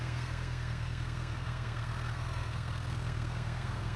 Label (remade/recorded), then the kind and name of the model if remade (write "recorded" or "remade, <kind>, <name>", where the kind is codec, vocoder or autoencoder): remade, codec, SNAC